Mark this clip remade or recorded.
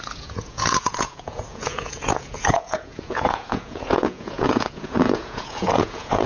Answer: remade